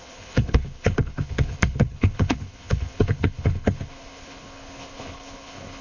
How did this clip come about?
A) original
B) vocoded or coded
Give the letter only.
B